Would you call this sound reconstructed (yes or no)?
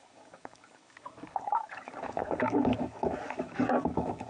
yes